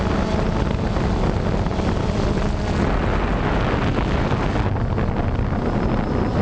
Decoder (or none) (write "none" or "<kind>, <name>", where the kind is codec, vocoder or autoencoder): none